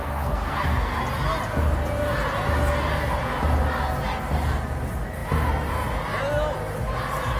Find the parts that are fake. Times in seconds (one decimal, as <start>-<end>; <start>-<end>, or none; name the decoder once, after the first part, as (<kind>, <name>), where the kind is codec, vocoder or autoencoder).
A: 0.0-1.0 (codec, SNAC)

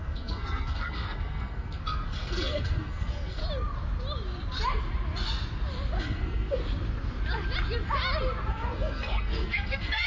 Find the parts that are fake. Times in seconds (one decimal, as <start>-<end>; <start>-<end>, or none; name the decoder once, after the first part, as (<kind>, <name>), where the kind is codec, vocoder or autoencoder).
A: 0.0-3.4 (codec, SNAC); 6.0-6.6; 8.5-10.1

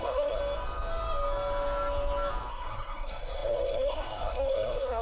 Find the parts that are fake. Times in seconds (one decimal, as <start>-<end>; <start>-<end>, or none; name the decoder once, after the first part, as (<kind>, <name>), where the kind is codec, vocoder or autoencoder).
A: 0.0-0.4 (codec, SNAC); 2.5-5.0

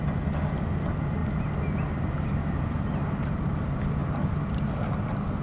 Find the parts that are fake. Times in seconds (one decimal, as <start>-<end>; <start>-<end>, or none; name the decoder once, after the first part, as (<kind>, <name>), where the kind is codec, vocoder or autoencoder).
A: none

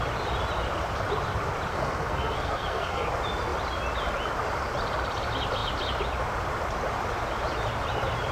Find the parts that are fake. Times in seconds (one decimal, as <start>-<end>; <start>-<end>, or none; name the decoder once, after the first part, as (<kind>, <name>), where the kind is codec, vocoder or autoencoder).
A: 1.7-3.1 (codec, SNAC)